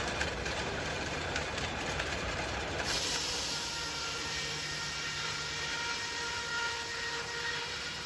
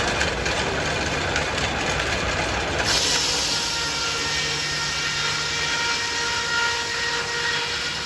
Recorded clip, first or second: second